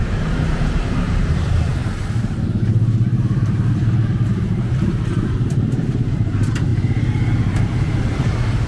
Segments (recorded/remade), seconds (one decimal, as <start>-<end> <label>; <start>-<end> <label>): 0.0-6.7 remade; 6.7-7.6 recorded; 7.6-8.7 remade